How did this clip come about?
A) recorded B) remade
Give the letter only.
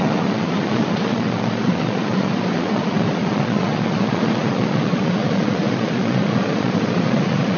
B